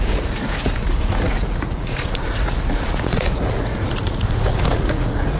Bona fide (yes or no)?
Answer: no